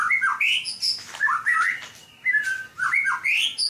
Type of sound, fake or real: real